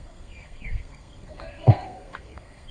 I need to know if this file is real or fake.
fake